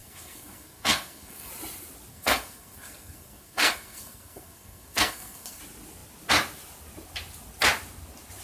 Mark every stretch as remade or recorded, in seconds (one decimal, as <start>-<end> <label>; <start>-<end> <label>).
0.0-1.5 remade; 1.5-2.1 recorded; 2.1-5.6 remade; 5.6-8.4 recorded

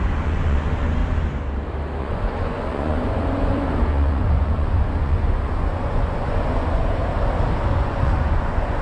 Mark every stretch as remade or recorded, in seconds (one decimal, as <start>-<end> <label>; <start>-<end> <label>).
0.0-1.0 remade; 1.0-2.0 recorded; 2.0-7.0 remade; 7.0-7.7 recorded; 7.7-8.8 remade